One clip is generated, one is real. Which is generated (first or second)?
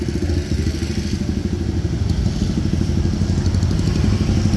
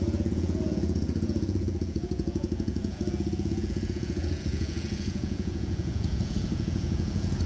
second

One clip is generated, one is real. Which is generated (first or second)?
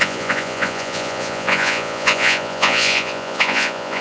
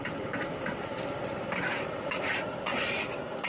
first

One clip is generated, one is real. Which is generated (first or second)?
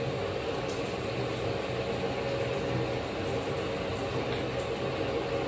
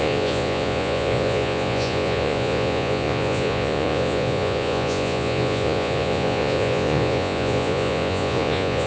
second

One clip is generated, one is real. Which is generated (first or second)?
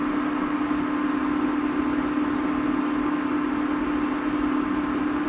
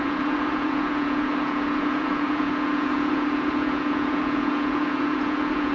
second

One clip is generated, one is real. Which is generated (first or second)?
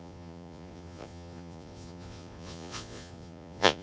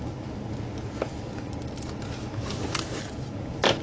first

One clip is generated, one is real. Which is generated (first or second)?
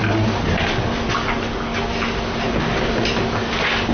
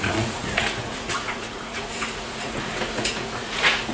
second